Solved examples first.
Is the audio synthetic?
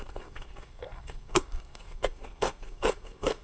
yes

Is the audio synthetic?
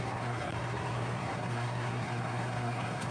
yes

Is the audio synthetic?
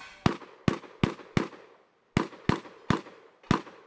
no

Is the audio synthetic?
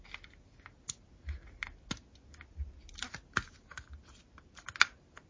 no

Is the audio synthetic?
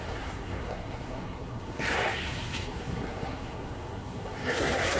yes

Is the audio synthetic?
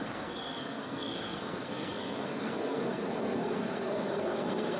yes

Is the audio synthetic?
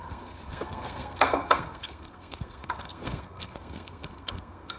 yes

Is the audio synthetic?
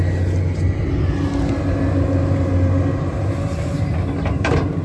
no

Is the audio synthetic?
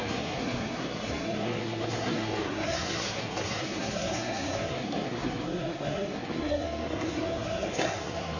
yes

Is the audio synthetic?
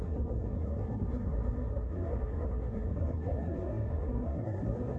yes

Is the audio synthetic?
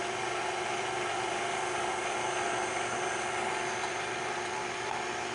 no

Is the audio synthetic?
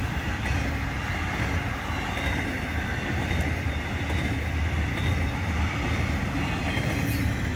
no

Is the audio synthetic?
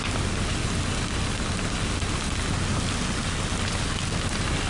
no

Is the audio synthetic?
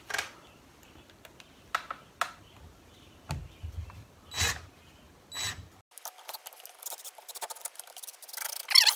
no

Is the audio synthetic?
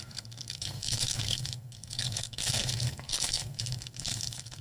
yes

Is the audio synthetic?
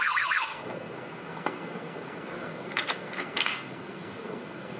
yes